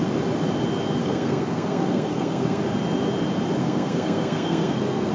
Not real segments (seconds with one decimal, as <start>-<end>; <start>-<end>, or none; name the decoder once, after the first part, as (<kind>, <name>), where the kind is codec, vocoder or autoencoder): 1.0-2.6 (codec, SNAC); 3.6-5.1